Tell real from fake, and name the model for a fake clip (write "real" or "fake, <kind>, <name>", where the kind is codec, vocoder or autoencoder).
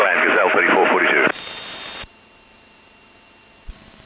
fake, vocoder, BigVGAN v2